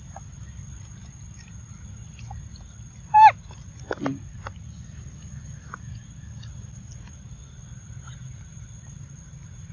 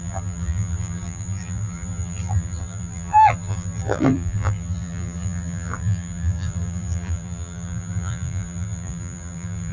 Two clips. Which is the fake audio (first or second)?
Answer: second